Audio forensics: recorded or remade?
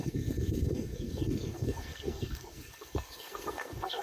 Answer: remade